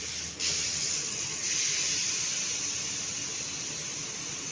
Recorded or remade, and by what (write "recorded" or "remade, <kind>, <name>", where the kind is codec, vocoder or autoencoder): recorded